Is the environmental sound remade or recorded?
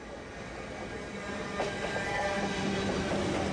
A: recorded